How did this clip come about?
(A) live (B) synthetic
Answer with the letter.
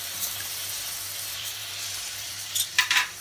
B